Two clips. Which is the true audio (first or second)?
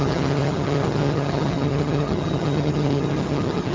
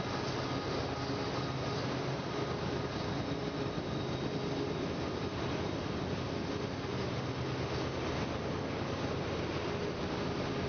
second